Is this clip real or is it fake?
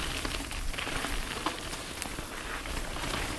real